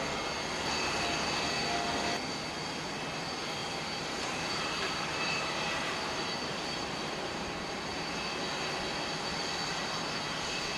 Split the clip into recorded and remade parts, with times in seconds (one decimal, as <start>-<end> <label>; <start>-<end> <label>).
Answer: 0.0-3.6 recorded; 3.6-8.1 remade; 8.1-10.8 recorded